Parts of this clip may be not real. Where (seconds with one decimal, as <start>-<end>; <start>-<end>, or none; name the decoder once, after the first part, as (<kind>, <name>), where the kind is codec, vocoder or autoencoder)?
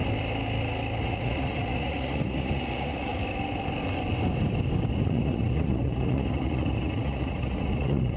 1.0-3.1 (vocoder, Vocos); 5.0-8.2